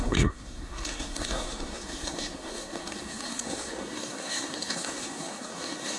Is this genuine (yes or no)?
no